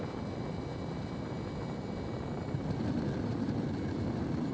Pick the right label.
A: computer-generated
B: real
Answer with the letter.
B